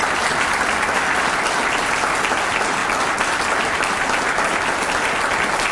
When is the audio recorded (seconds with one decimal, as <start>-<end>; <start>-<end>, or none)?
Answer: 0.0-5.7